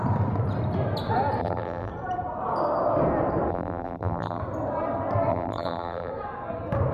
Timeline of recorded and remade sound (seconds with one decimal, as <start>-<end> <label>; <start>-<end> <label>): 0.0-1.4 recorded; 1.4-1.9 remade; 1.9-3.5 recorded; 3.5-4.4 remade; 4.4-5.3 recorded; 5.3-6.1 remade; 6.1-6.9 recorded